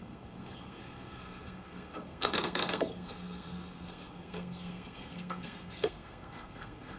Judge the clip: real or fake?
fake